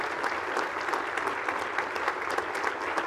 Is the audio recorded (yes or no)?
yes